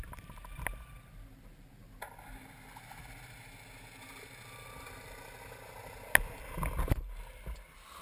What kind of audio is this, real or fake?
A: real